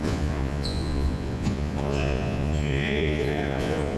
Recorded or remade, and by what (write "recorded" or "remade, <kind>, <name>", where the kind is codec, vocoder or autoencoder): remade, vocoder, Vocos